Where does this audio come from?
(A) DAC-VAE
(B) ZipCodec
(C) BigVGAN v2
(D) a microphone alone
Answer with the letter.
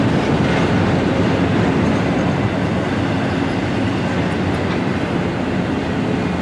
D